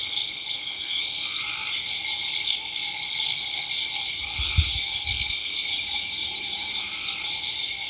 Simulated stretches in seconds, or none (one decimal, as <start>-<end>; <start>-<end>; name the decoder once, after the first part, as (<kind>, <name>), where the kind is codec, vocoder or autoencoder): 0.0-1.4 (codec, SNAC); 2.3-3.7; 5.0-5.7